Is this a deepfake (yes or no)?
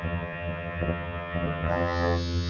yes